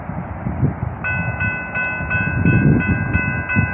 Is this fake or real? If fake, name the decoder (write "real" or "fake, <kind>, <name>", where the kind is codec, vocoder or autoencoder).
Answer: real